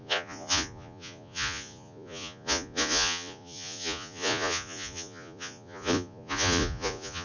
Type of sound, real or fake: fake